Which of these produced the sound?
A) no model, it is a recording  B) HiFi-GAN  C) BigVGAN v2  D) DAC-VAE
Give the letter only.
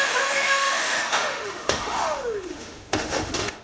D